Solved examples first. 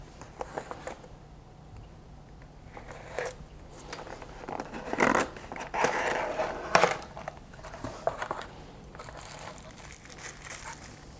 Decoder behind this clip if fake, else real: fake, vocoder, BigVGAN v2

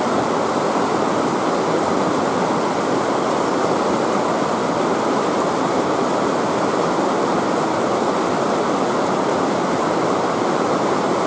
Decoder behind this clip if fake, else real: real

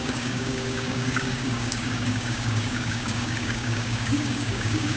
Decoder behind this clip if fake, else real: fake, codec, DAC